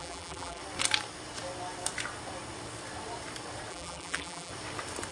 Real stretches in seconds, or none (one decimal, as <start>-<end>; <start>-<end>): 0.6-3.7; 4.5-5.1